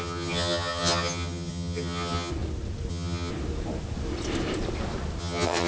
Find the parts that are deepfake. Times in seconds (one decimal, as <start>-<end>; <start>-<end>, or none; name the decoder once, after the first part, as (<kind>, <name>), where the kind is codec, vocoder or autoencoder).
0.0-2.3 (vocoder, HiFi-GAN); 2.9-3.3; 5.2-5.7